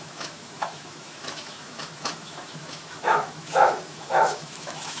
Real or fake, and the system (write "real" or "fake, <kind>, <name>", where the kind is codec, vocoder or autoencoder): fake, autoencoder, DAC-VAE